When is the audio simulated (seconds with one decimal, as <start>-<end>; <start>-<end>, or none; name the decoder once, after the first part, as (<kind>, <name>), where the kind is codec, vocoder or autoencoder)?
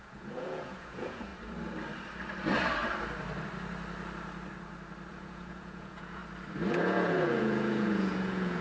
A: 0.0-1.3 (vocoder, Vocos); 5.1-6.2; 6.7-8.6